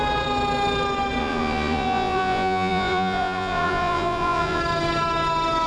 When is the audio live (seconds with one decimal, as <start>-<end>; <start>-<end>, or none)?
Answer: 0.0-1.2; 4.6-5.7